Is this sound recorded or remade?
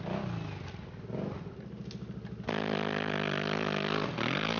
recorded